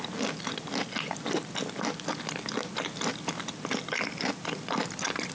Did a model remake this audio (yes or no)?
no